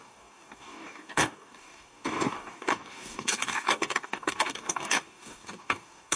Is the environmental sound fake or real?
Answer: fake